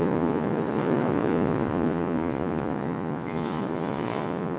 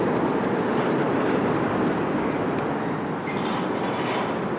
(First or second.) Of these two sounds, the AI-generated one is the first